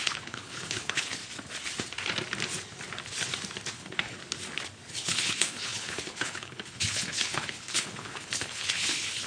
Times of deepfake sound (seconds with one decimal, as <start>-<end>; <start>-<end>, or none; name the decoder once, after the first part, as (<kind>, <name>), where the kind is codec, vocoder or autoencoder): 0.0-1.2 (codec, HILCodec); 3.7-4.2; 4.9-9.3